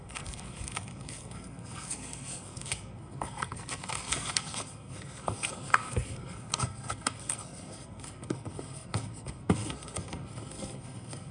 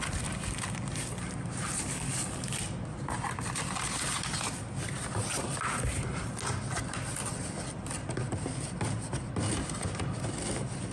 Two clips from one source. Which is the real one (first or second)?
second